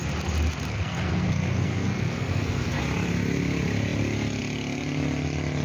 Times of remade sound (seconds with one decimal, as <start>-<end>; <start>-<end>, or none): 0.7-2.8